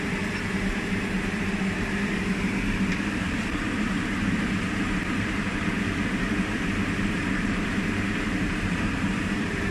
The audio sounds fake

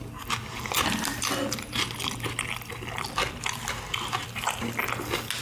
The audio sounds real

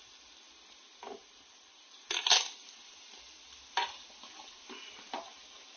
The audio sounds real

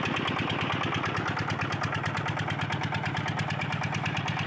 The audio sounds real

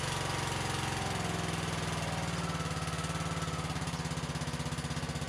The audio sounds real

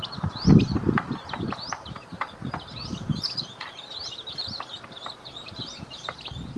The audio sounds fake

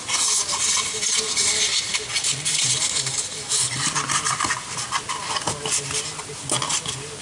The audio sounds real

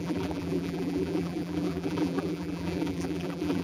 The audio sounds fake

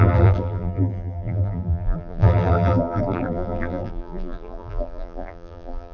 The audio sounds fake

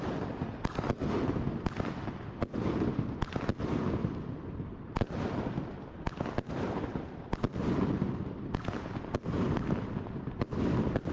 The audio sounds real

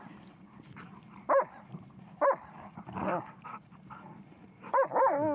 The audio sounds real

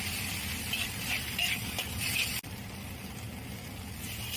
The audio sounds real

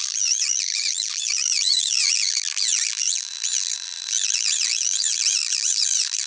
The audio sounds fake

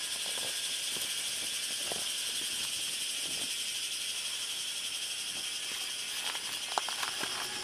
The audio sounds real